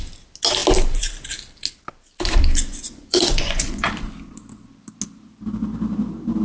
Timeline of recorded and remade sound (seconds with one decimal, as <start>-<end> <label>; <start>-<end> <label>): 0.0-2.7 recorded; 2.7-3.9 remade; 3.9-6.4 recorded